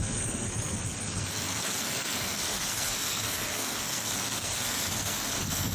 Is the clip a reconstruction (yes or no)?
yes